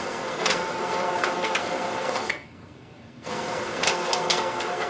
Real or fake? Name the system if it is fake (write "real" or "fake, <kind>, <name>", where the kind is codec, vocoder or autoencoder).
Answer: fake, codec, SNAC